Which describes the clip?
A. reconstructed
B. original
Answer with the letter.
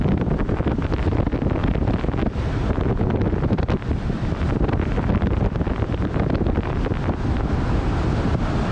A